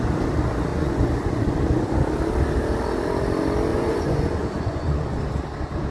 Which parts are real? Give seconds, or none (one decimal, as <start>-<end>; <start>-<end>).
0.0-0.7; 1.4-3.7; 5.2-5.9